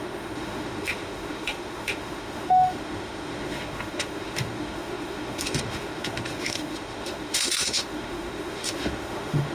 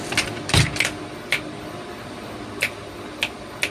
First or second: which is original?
second